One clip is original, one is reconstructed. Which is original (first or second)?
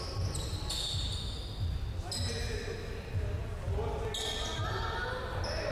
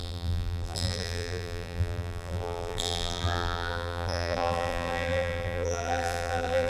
first